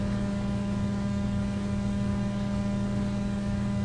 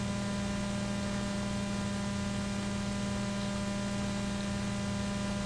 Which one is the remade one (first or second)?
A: first